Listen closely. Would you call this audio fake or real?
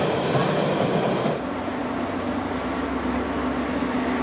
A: real